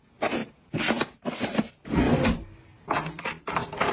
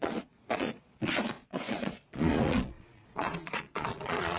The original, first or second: first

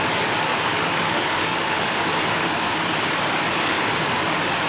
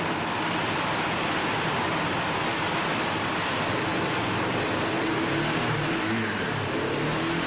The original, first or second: second